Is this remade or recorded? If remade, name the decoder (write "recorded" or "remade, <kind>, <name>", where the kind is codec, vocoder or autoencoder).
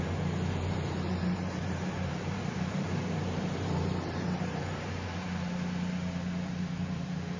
remade, vocoder, BigVGAN v2